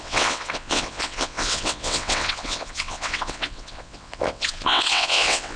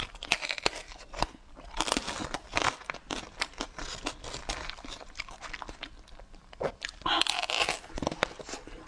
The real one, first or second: second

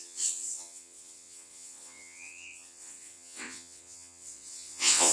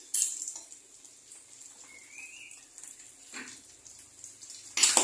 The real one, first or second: second